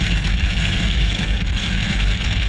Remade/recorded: remade